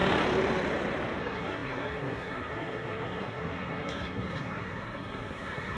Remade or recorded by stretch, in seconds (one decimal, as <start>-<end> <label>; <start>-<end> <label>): 0.0-1.2 recorded; 1.2-5.8 remade